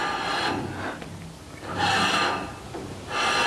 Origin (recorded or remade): recorded